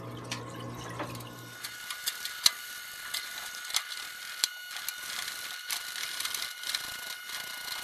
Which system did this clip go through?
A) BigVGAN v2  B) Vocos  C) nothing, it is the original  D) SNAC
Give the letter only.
C